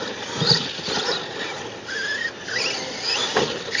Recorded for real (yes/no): yes